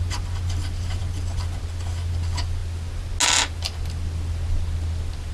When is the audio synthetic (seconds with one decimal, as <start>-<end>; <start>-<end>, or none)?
none